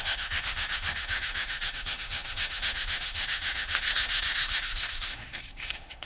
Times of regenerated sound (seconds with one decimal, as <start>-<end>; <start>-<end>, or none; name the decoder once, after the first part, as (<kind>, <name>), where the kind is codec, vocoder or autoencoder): 0.0-6.1 (autoencoder, DAC-VAE)